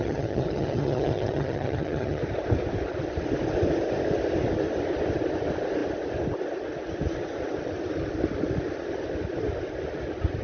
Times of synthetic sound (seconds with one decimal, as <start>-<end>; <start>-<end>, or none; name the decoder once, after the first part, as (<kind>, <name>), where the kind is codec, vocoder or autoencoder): 0.0-2.2 (vocoder, HiFi-GAN)